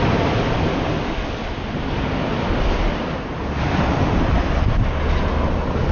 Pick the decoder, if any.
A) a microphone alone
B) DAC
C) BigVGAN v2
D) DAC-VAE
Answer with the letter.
A